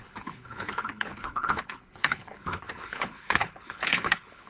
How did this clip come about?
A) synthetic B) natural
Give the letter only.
A